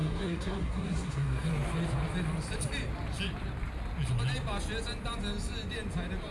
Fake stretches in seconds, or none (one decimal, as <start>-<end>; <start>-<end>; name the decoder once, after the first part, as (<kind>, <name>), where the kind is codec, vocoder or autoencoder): 0.0-1.5 (codec, SNAC)